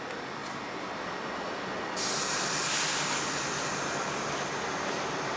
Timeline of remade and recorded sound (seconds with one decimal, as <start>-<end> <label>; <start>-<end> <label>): 0.0-5.4 recorded